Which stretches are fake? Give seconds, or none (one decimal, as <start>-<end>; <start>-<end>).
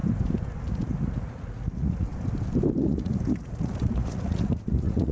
0.7-2.1; 2.8-5.1